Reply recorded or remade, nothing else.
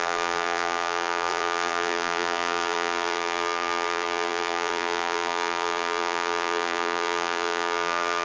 remade